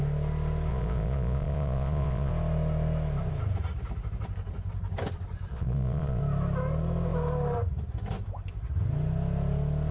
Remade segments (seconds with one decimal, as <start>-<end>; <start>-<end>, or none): 0.7-2.3; 5.5-6.2

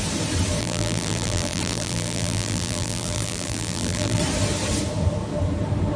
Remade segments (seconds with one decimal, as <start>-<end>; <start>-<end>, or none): 0.6-4.2

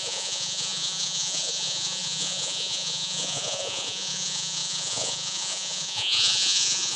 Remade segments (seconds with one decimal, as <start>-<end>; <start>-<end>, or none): 0.0-7.0

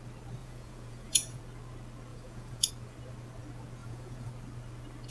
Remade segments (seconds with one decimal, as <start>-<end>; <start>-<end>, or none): 0.4-1.4; 2.1-2.7; 3.8-4.3

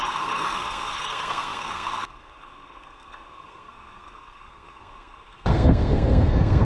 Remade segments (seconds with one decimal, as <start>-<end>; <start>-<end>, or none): 0.0-6.6

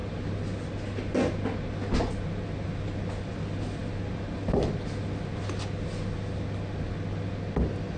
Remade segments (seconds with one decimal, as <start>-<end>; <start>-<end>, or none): none

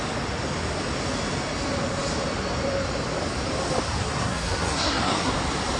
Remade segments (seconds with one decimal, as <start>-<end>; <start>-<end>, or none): 4.0-5.3

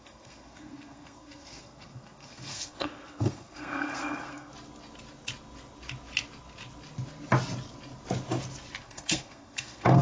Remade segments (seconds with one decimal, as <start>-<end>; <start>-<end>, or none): 0.0-4.5; 8.8-10.0